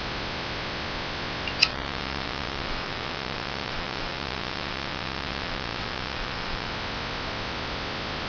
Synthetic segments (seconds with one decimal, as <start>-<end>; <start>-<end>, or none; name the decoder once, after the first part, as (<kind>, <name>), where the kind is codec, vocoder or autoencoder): 1.7-6.7 (vocoder, WaveNeXt)

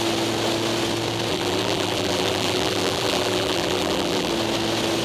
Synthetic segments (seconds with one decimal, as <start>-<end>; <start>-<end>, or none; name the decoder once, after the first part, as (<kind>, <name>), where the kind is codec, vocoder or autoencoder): 1.3-4.3 (vocoder, BigVGAN v2)

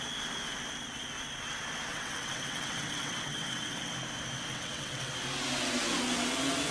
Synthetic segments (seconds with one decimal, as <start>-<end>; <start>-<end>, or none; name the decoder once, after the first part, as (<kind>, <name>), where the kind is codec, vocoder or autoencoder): 1.9-3.9 (vocoder, WaveNeXt); 4.5-5.1

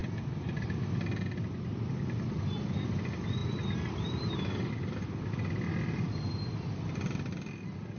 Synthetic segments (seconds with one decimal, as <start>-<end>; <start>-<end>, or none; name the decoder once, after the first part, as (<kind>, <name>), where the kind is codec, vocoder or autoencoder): none